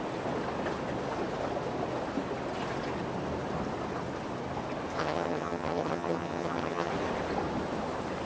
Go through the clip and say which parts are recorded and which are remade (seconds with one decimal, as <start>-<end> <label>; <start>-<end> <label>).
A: 0.0-5.0 recorded; 5.0-6.9 remade; 6.9-8.3 recorded